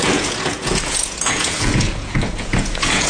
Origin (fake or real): fake